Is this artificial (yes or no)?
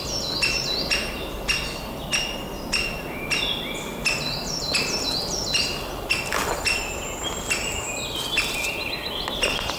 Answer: no